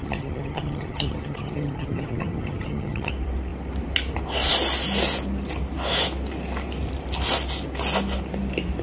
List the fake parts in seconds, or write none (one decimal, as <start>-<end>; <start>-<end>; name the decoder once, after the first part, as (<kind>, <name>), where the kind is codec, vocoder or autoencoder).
0.0-3.1 (vocoder, HiFi-GAN)